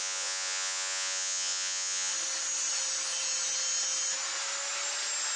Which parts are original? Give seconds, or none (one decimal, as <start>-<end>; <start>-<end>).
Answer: 2.1-5.4